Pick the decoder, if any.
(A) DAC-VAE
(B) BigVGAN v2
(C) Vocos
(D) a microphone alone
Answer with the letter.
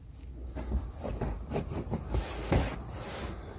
D